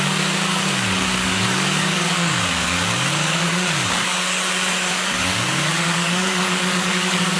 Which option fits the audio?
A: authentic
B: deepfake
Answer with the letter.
B